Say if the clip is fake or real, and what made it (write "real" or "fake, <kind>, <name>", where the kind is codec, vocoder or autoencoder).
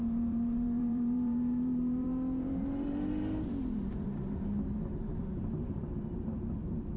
fake, vocoder, BigVGAN v2